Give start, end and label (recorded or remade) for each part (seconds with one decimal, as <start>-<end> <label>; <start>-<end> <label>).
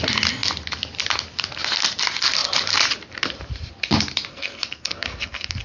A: 0.0-4.3 recorded; 4.3-5.6 remade